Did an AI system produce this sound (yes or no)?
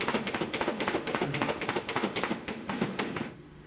yes